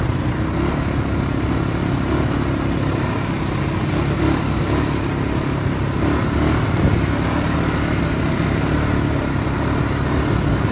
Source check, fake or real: real